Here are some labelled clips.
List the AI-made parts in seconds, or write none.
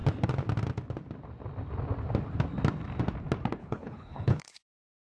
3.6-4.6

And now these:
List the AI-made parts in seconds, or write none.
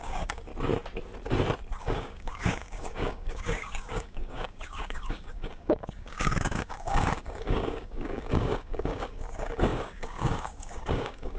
0.0-0.5; 1.8-11.4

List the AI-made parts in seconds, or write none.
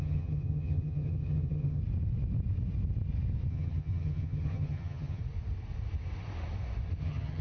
0.0-1.8; 3.5-5.2; 7.0-7.4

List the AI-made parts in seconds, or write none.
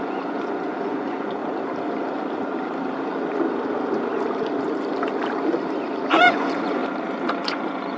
0.0-1.4; 6.1-6.8; 7.3-8.0